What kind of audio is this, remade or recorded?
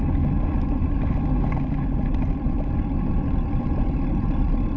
recorded